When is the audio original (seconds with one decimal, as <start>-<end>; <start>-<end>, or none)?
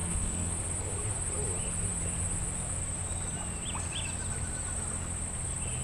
0.6-5.8